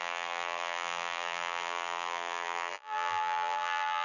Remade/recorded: remade